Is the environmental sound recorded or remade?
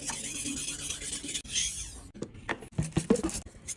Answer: recorded